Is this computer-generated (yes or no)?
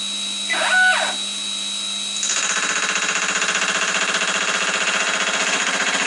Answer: no